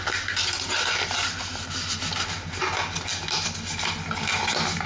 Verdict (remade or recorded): recorded